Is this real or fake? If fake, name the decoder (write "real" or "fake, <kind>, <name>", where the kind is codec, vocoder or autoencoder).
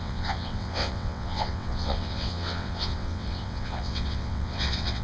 fake, vocoder, WaveNeXt